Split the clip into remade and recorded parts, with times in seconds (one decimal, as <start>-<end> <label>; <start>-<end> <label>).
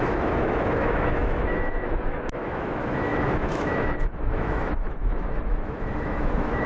0.0-6.7 remade